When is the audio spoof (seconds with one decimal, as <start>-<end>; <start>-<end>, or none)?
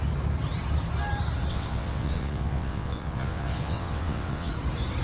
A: 1.5-4.5